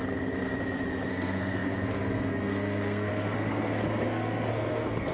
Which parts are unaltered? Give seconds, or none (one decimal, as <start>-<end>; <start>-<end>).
0.0-1.1

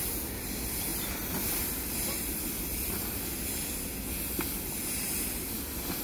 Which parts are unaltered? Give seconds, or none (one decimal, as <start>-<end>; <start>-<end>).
0.0-6.0

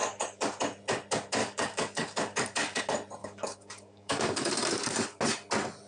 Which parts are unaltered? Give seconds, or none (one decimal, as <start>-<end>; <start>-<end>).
0.6-1.4; 2.8-3.2; 5.2-5.9

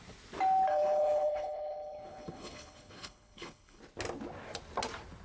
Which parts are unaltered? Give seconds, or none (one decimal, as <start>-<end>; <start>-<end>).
0.0-0.7; 3.8-5.2